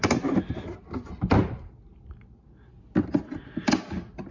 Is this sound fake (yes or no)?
no